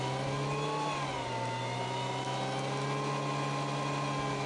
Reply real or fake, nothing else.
real